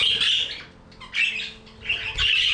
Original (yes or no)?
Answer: yes